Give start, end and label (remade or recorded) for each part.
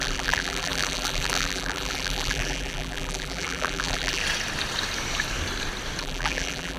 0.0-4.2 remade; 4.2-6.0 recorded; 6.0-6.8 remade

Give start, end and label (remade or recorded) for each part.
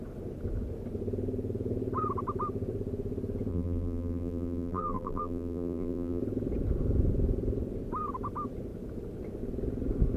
0.0-3.5 recorded; 3.5-6.2 remade; 6.2-10.2 recorded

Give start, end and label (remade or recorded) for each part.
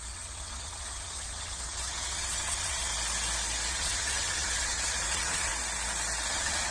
0.0-2.9 remade; 2.9-3.7 recorded; 3.7-5.5 remade; 5.5-6.3 recorded; 6.3-6.7 remade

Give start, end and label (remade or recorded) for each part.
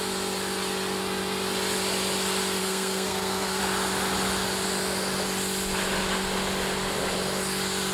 0.0-2.6 recorded; 2.6-3.6 remade; 3.6-7.9 recorded